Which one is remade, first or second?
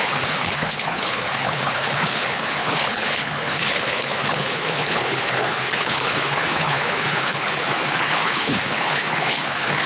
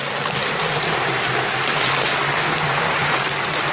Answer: first